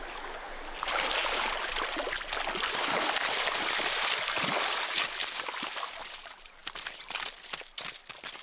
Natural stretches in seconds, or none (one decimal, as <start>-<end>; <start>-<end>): 0.0-8.4